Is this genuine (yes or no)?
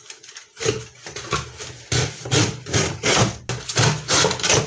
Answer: yes